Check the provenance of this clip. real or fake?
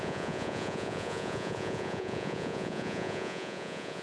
fake